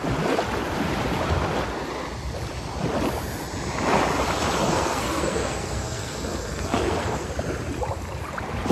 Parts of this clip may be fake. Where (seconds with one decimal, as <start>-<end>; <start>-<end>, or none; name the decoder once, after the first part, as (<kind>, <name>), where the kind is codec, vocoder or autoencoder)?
4.6-7.3 (codec, SNAC)